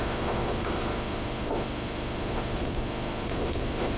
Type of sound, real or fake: fake